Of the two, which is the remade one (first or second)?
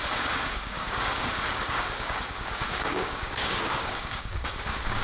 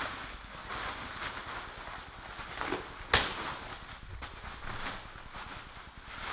first